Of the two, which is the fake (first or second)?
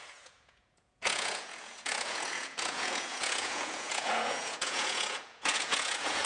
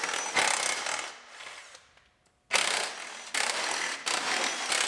first